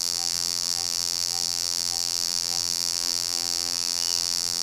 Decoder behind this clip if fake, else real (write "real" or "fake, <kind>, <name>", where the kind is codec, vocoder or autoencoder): fake, vocoder, BigVGAN v2